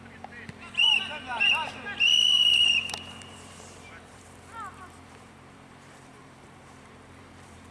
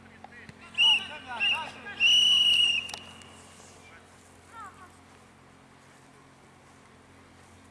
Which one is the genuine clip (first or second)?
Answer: second